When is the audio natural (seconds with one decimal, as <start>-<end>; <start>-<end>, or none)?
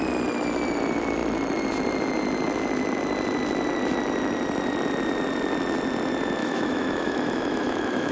0.0-6.4